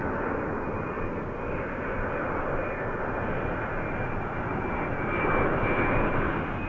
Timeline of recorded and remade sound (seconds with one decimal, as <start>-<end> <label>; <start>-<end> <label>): 0.0-6.7 recorded